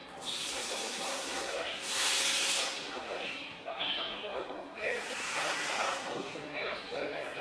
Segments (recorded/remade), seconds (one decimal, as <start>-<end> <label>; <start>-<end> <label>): 0.0-7.4 remade